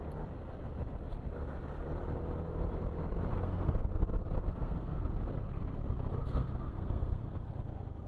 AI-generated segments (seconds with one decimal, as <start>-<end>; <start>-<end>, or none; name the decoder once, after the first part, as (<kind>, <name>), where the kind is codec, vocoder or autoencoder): 3.3-3.9 (codec, SNAC); 4.5-5.1; 6.2-7.5